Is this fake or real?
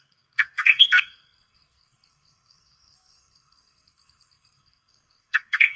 fake